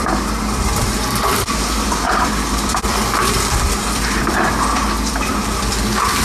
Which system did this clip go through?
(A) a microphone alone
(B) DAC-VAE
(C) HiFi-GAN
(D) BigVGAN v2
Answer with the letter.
D